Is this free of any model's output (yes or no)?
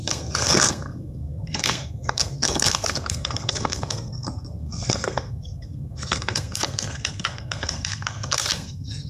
no